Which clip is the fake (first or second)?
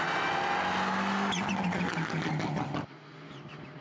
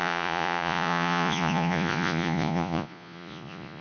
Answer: second